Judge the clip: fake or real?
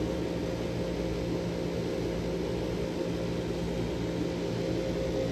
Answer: real